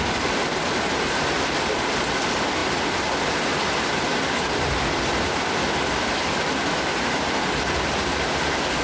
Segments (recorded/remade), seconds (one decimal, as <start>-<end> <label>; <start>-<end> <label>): 0.0-8.8 recorded